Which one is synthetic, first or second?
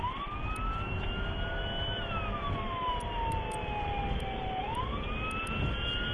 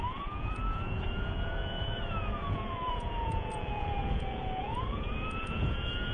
second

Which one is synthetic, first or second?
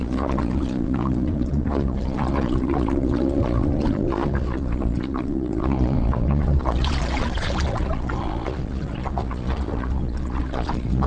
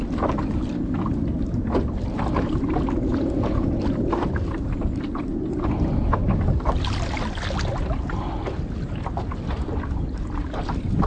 first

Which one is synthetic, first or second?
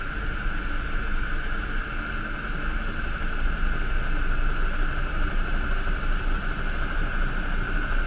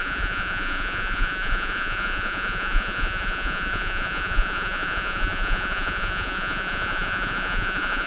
second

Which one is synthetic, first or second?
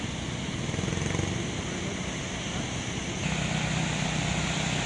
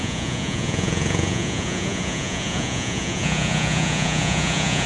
second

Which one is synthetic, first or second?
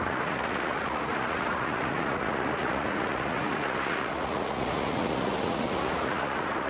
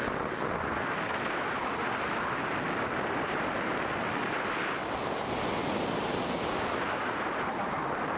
first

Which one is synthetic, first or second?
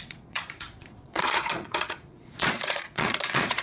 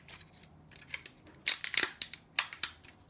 first